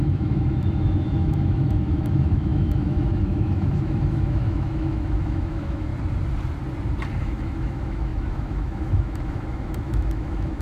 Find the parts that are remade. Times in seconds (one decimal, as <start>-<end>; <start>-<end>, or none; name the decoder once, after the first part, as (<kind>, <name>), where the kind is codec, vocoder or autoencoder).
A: 0.0-5.9 (autoencoder, DAC-VAE); 7.2-10.6